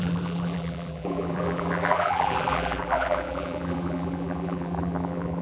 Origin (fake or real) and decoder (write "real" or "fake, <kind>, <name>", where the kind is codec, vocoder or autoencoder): fake, vocoder, BigVGAN v2